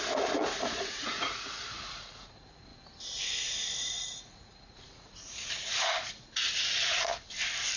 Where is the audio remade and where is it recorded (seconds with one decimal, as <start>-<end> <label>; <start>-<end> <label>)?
0.0-2.7 remade; 2.7-3.8 recorded; 3.8-7.1 remade; 7.1-7.8 recorded